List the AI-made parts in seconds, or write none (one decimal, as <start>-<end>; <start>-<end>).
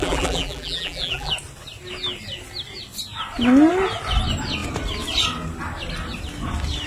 0.0-1.3